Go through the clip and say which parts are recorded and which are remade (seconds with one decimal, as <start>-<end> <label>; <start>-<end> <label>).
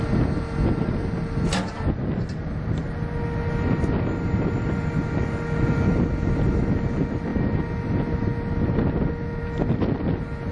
0.0-10.5 recorded